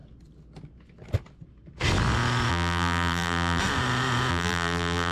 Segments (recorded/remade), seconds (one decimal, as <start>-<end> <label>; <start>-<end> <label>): 0.0-2.5 recorded; 2.5-3.6 remade; 3.6-4.3 recorded; 4.3-5.1 remade